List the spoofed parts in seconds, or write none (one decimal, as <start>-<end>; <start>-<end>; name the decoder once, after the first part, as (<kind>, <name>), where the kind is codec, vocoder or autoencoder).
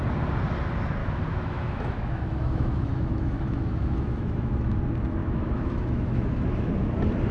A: 1.0-4.8 (autoencoder, DAC-VAE); 5.2-6.7